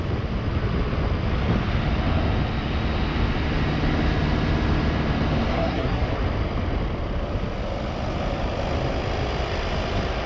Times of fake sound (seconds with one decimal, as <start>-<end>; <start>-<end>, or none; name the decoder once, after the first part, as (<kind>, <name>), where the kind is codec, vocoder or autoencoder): 5.5-6.0 (codec, SNAC)